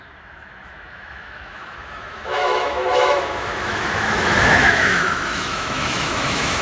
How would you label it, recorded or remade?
remade